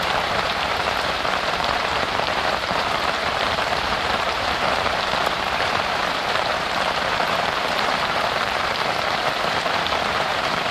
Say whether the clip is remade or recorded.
remade